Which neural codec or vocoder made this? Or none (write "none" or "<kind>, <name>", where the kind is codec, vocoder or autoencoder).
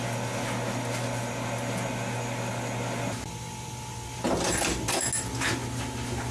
none